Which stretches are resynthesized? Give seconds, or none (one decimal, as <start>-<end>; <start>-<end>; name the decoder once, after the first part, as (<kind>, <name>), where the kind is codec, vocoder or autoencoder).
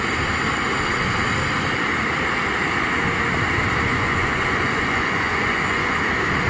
3.9-6.0 (vocoder, Vocos)